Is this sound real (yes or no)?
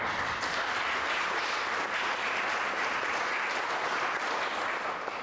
yes